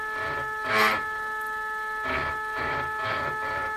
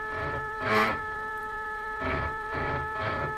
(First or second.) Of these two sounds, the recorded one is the first